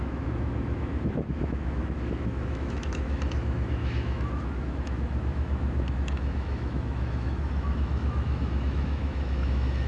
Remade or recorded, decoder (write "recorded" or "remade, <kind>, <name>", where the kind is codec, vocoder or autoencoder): remade, autoencoder, DAC-VAE